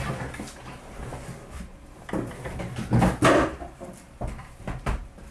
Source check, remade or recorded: recorded